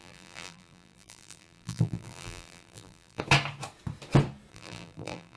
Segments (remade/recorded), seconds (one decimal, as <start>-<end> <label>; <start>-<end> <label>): 0.0-3.2 remade; 3.2-4.5 recorded; 4.5-5.4 remade